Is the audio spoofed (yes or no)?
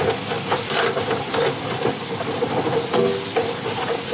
no